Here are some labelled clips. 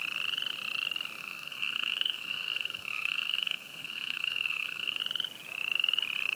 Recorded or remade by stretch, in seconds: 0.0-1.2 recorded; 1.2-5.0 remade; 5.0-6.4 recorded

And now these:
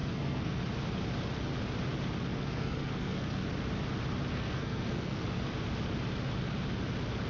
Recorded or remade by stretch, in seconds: 0.0-0.6 remade; 0.6-2.3 recorded; 2.3-3.4 remade; 3.4-4.3 recorded; 4.3-5.5 remade; 5.5-7.3 recorded